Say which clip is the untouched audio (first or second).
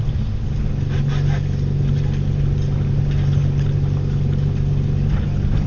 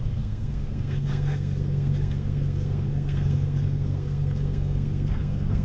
first